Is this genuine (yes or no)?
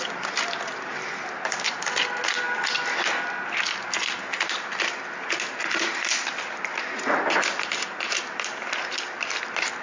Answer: yes